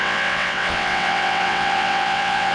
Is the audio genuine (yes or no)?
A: no